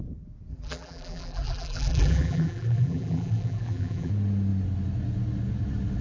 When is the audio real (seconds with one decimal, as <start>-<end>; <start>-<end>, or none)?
0.0-0.5; 4.1-6.0